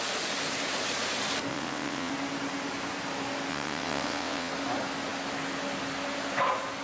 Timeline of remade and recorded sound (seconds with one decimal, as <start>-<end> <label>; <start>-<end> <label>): 0.0-1.5 recorded; 1.5-2.1 remade; 2.1-3.5 recorded; 3.5-4.5 remade; 4.5-6.8 recorded